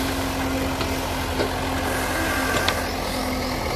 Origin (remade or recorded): recorded